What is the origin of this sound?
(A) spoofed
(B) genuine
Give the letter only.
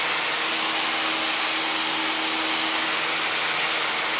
B